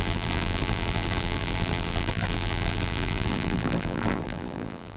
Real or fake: fake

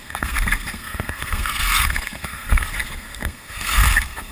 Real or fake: fake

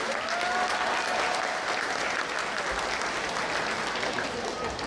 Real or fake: real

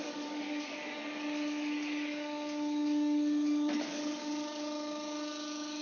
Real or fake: fake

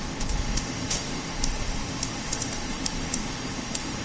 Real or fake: fake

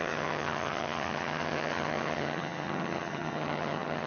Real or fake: fake